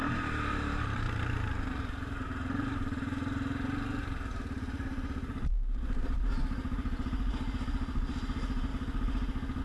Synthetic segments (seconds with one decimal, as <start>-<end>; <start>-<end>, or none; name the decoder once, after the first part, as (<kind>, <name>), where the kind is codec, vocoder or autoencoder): 0.0-8.7 (vocoder, BigVGAN v2)